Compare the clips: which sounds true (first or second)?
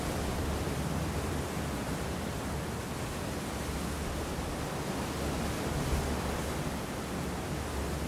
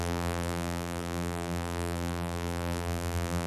first